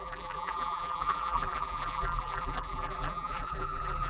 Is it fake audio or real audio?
fake